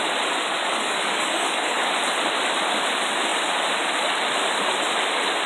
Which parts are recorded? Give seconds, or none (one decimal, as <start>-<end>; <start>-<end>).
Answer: 0.0-0.6; 1.9-5.5